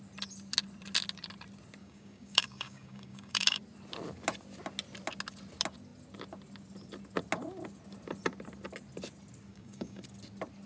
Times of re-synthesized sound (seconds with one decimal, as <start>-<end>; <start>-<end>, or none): 1.8-3.6; 9.5-10.0